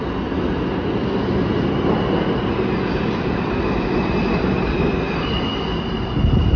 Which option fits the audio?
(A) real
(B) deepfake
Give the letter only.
A